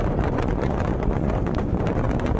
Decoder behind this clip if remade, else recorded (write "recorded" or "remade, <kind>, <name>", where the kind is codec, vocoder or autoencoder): remade, vocoder, Vocos